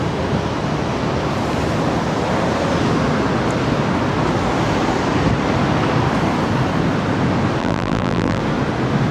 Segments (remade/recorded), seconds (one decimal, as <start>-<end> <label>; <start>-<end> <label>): 0.0-7.6 recorded; 7.6-8.4 remade; 8.4-9.1 recorded